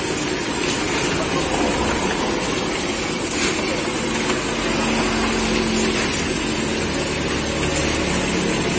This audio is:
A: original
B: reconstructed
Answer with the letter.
A